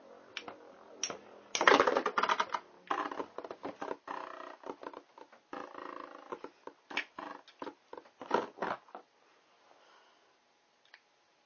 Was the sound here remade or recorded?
recorded